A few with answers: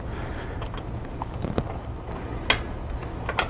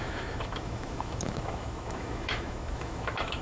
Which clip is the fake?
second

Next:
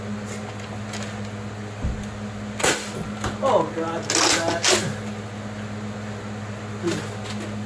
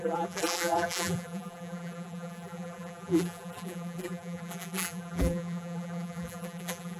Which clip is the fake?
second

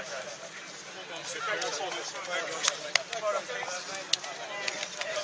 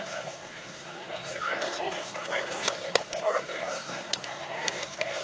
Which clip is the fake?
second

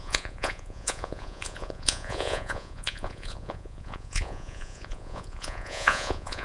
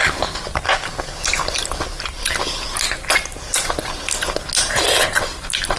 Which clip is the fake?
first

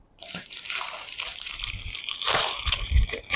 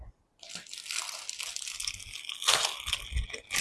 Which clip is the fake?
first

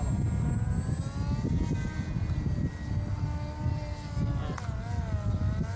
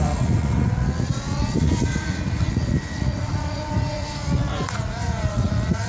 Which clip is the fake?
second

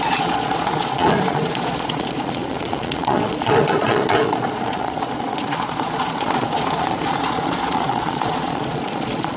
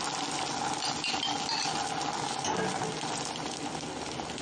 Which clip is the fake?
first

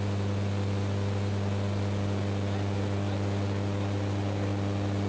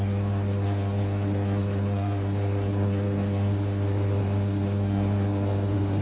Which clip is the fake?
second